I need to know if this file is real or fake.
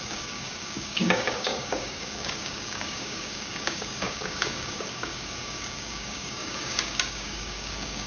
fake